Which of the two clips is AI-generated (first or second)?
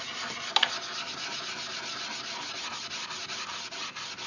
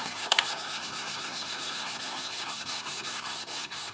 second